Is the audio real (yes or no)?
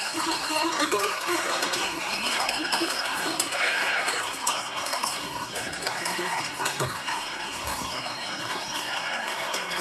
no